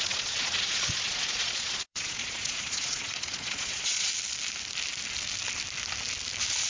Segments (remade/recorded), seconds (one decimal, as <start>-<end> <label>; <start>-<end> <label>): 0.0-4.1 remade; 4.1-6.7 recorded